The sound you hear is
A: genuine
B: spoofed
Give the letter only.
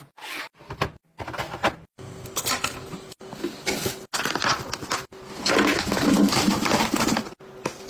A